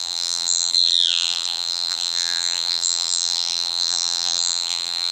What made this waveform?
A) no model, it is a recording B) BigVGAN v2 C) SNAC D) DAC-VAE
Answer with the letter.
B